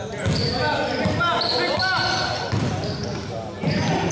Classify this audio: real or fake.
real